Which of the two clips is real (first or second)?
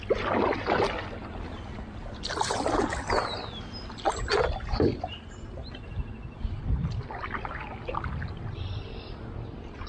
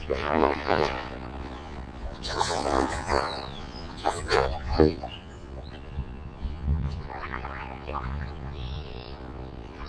first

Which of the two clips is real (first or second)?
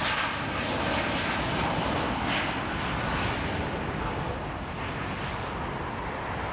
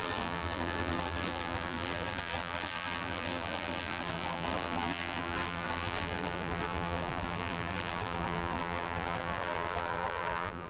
first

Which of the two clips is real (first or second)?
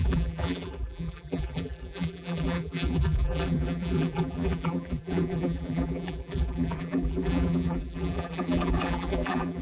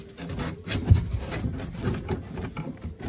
second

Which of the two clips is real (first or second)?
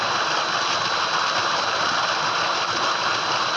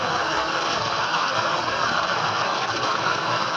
first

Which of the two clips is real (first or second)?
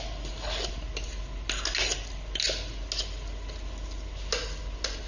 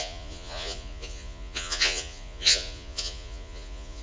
first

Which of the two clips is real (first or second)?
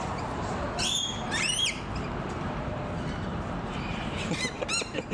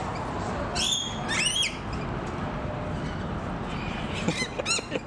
second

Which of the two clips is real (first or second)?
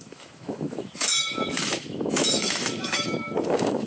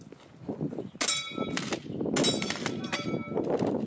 second